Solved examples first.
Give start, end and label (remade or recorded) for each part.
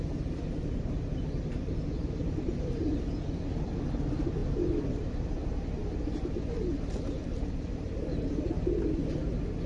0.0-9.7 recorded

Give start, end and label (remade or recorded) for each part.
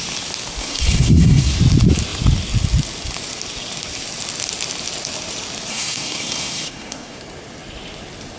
0.0-0.6 recorded; 0.6-1.6 remade; 1.6-5.7 recorded; 5.7-7.2 remade; 7.2-8.4 recorded